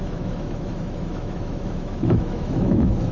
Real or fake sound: fake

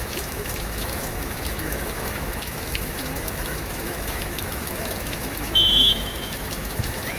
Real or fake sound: fake